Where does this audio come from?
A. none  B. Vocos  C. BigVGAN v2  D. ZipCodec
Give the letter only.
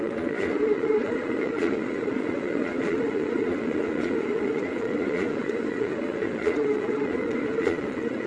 B